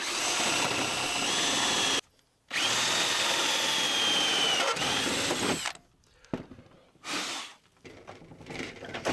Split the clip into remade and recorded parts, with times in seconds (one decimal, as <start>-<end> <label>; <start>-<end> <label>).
0.0-7.5 recorded; 7.5-9.1 remade